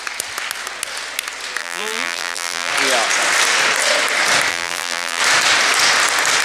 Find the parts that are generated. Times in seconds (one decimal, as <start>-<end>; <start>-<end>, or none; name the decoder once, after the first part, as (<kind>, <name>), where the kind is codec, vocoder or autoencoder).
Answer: 1.6-2.7 (vocoder, BigVGAN v2); 4.5-5.2